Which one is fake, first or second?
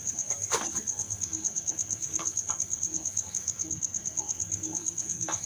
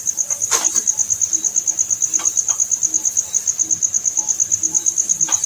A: first